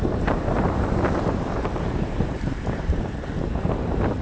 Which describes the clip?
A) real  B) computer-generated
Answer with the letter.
B